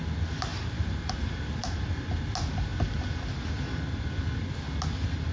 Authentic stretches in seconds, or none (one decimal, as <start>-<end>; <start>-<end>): 0.0-0.5; 1.9-5.3